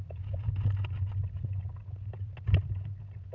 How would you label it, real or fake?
real